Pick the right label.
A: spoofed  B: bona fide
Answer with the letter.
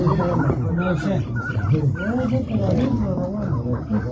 B